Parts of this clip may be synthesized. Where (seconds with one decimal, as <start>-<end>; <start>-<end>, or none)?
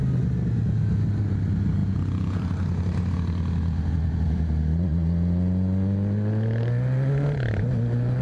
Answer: 1.8-2.4